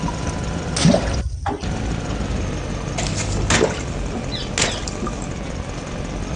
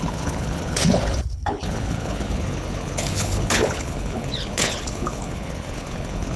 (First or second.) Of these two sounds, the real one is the first